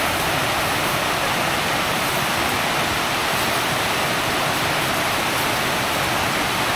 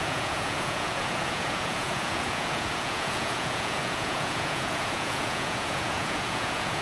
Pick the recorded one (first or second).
first